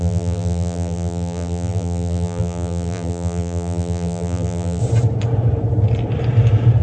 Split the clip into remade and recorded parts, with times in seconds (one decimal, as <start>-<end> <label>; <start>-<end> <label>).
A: 0.0-4.8 remade; 4.8-6.8 recorded